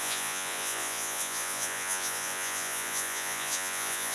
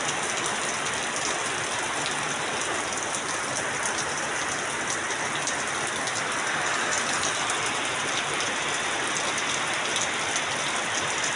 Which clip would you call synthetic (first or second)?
first